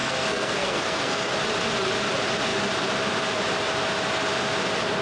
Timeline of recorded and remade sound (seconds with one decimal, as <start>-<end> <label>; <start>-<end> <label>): 0.0-1.3 remade; 1.3-5.0 recorded